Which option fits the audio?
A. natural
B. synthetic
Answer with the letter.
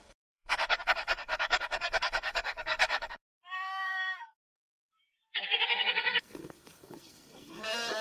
B